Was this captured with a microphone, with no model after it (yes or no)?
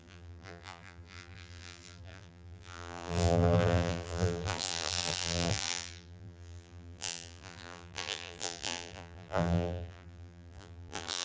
no